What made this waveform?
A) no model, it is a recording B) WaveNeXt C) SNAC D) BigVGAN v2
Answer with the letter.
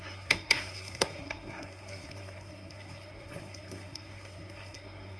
C